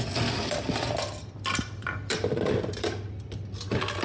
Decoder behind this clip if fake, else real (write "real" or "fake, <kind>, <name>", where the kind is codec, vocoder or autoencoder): real